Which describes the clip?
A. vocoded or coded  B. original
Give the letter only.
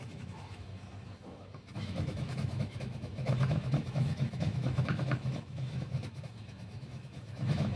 A